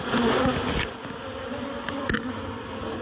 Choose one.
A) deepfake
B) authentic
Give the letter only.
B